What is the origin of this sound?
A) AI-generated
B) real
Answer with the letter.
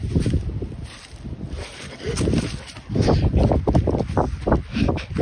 B